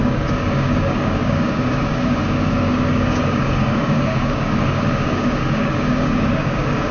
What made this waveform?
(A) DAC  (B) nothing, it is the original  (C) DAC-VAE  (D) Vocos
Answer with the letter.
A